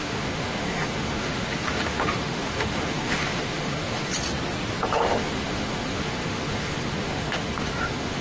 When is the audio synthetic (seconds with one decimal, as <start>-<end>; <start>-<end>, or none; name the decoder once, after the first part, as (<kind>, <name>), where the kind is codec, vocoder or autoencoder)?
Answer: 0.0-4.1 (autoencoder, DAC-VAE); 4.9-8.2